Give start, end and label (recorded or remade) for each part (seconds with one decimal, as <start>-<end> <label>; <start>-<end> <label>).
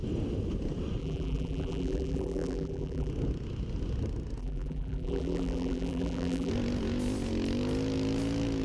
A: 0.0-1.0 recorded; 1.0-3.1 remade; 3.1-4.4 recorded; 4.4-6.5 remade; 6.5-8.6 recorded